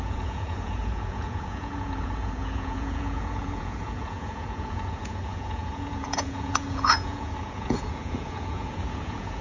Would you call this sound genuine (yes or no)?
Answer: no